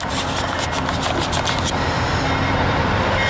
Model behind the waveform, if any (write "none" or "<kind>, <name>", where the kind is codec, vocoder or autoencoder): none